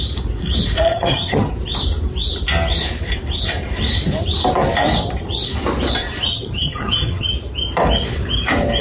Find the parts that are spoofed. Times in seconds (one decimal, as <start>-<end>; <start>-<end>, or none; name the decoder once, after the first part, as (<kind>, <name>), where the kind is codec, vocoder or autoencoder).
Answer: 0.9-1.5 (vocoder, HiFi-GAN); 6.3-7.3